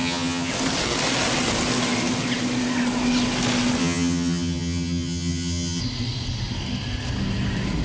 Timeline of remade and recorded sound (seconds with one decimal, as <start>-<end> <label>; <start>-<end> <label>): 0.0-0.5 remade; 0.5-3.8 recorded; 3.8-5.8 remade; 5.8-7.8 recorded